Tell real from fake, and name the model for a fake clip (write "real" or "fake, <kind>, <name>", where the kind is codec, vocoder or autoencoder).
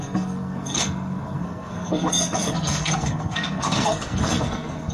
fake, codec, SNAC